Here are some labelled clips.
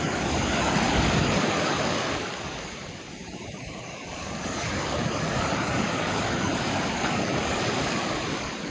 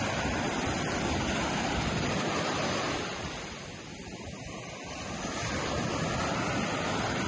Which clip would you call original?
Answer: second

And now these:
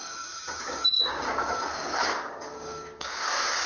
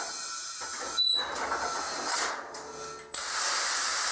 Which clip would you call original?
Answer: second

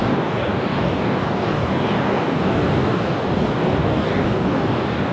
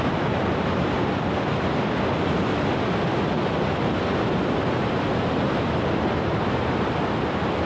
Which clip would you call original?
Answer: second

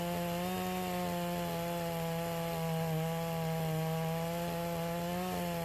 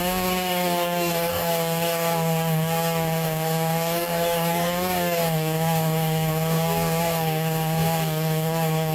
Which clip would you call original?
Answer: first